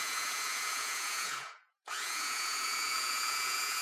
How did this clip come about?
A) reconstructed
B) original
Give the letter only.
A